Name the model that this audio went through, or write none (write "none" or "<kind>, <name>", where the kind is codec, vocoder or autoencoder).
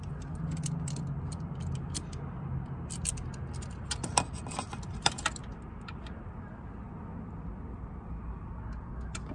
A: none